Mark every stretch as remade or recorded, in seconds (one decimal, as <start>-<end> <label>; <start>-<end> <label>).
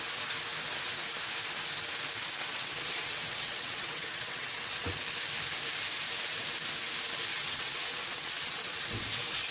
0.0-2.4 recorded; 2.4-5.0 remade; 5.0-7.3 recorded; 7.3-9.5 remade